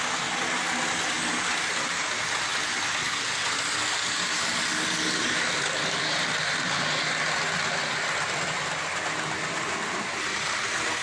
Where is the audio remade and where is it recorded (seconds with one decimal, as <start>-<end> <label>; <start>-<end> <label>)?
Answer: 0.0-11.0 recorded